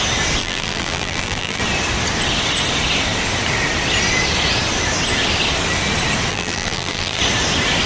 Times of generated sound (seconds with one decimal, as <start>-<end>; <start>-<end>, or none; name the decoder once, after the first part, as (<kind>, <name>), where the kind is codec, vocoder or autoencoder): 0.4-1.6 (vocoder, BigVGAN v2); 6.3-7.2